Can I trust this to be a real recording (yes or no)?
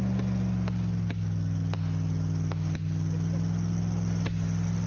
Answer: yes